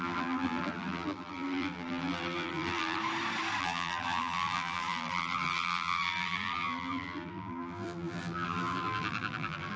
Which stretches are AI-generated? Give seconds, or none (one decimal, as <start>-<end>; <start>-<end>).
0.0-3.0; 3.6-9.8